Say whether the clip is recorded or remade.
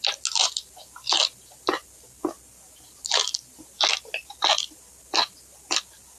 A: recorded